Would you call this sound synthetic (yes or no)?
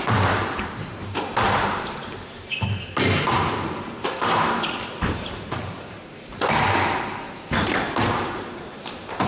yes